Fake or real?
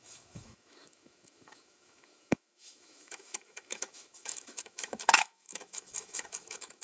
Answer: fake